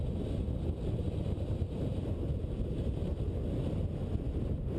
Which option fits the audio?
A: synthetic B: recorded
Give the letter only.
B